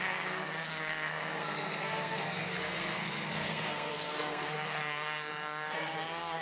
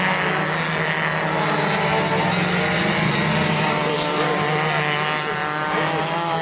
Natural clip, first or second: second